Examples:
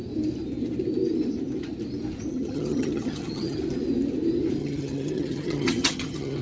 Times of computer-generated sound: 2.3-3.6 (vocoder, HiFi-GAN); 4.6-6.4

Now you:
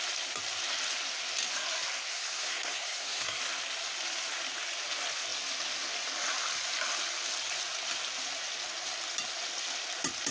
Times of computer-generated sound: 2.1-3.4 (codec, SNAC)

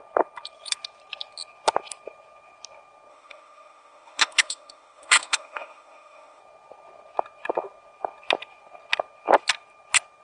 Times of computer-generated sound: 3.1-6.4 (autoencoder, DAC-VAE)

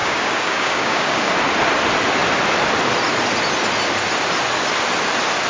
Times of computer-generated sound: 0.0-1.3 (codec, DAC)